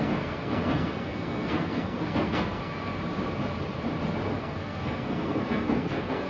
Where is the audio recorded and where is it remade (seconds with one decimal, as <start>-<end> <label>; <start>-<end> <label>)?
0.0-2.9 remade; 2.9-4.4 recorded; 4.4-6.3 remade